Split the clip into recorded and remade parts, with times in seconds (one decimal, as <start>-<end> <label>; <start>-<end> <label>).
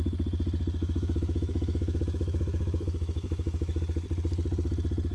0.0-0.8 recorded; 0.8-3.8 remade; 3.8-5.1 recorded